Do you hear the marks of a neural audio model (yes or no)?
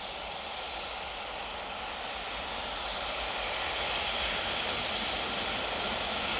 no